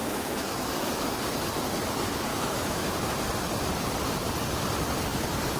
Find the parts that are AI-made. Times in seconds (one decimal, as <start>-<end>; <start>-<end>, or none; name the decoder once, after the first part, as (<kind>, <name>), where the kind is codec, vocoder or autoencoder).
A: 0.0-1.0 (autoencoder, DAC-VAE); 2.3-2.9